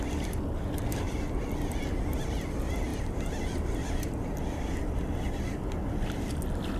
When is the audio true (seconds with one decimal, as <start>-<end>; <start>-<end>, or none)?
0.0-6.8

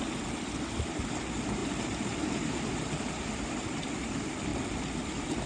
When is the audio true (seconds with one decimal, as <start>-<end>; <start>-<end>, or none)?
0.0-5.5

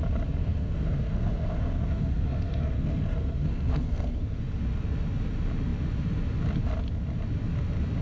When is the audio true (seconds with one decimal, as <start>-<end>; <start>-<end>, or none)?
0.0-0.4; 4.4-8.0

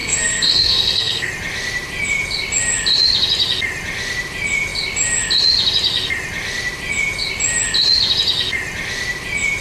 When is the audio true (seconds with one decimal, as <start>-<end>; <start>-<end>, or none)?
1.3-9.6

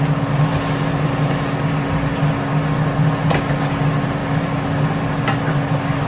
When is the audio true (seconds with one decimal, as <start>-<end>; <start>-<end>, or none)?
0.0-6.1

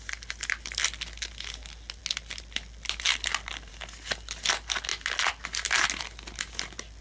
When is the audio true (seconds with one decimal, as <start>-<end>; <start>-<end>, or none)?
0.0-7.0

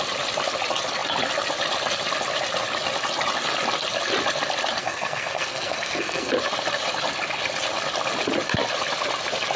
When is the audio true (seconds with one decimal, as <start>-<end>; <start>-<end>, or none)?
0.0-4.8; 6.3-9.6